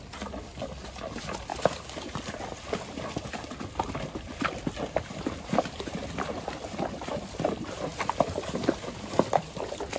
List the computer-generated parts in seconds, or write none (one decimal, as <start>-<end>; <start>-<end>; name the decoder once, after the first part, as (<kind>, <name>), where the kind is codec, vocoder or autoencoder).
none